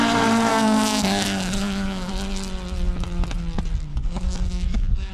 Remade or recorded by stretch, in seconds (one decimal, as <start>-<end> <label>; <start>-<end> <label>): 0.0-0.5 recorded; 0.5-2.1 remade; 2.1-3.9 recorded; 3.9-5.1 remade